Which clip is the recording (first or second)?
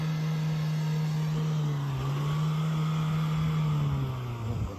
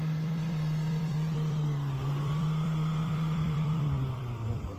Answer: first